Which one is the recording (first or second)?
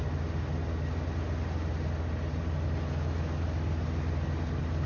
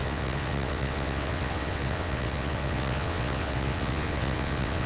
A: first